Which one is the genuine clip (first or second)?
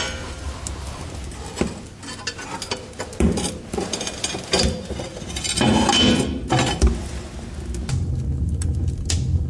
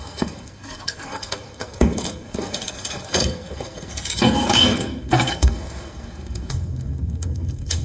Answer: first